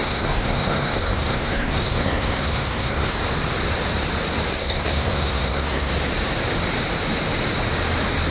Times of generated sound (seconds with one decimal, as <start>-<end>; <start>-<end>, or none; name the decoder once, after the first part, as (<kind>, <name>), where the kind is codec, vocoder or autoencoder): 0.0-3.2 (codec, SNAC); 4.5-5.9